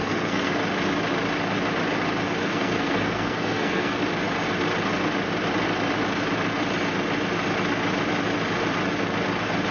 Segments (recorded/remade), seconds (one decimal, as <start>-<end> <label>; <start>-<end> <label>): 0.0-0.5 remade; 0.5-2.5 recorded; 2.5-4.0 remade; 4.0-9.7 recorded